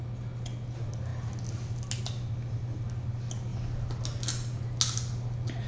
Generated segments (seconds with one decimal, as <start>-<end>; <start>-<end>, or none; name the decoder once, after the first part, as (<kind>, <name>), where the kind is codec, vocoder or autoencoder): none